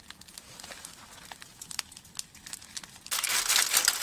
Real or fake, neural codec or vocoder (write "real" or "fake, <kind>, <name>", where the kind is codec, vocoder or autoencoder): real